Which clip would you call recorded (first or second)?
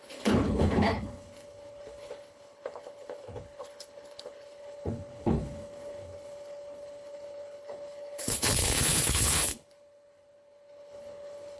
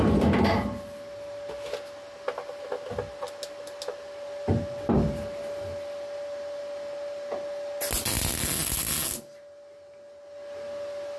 second